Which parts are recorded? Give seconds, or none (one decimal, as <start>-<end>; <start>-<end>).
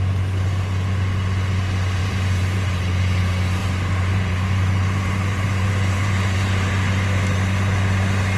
0.0-2.0; 3.2-3.6; 6.7-8.4